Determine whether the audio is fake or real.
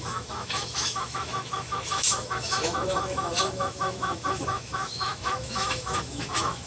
fake